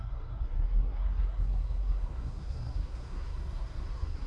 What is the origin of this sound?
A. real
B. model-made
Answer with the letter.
B